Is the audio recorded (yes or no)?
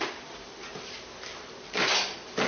yes